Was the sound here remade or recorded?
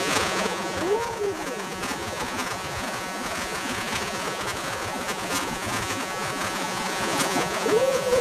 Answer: remade